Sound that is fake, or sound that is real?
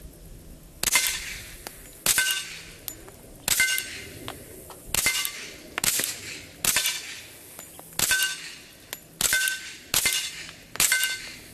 real